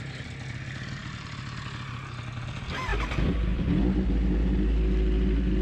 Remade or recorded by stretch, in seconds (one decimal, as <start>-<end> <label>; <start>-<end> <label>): 0.0-1.0 recorded; 1.0-1.6 remade; 1.6-2.9 recorded; 2.9-3.8 remade; 3.8-5.6 recorded